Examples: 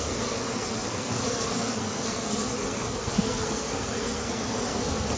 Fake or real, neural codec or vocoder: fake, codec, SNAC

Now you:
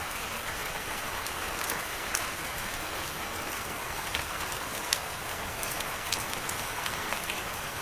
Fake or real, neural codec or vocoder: fake, codec, SNAC